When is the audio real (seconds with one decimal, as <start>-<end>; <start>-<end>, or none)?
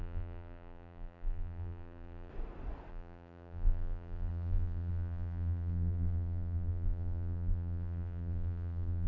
2.3-2.9